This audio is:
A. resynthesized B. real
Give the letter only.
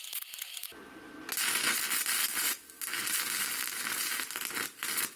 B